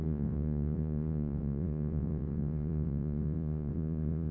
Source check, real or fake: fake